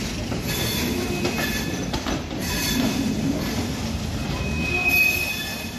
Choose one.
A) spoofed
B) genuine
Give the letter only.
B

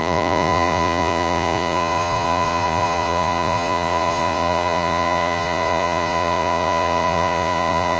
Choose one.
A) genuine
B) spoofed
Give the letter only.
B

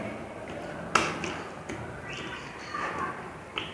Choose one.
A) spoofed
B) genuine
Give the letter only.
B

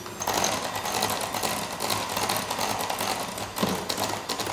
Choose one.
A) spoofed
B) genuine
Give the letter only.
B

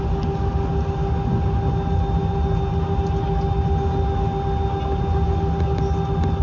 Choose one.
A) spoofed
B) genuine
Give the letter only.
B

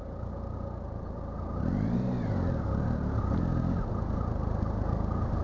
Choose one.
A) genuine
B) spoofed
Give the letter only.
A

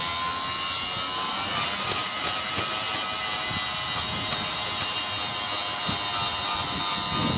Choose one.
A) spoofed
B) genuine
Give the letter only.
B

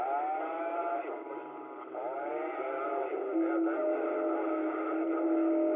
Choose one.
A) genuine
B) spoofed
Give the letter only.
A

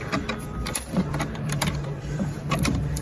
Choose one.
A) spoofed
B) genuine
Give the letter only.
A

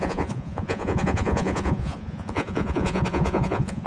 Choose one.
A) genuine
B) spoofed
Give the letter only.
B